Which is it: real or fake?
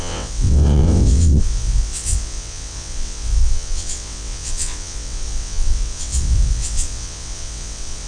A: fake